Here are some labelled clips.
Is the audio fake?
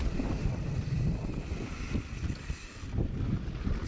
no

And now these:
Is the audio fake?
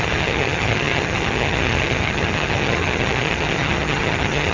yes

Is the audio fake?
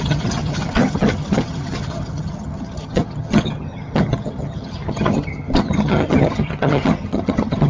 yes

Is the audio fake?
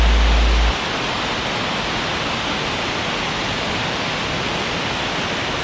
no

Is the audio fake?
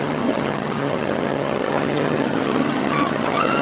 yes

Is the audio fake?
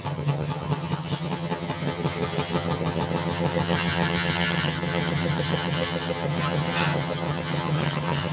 yes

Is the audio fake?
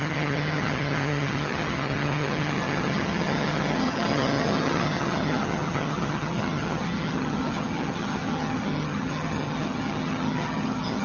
yes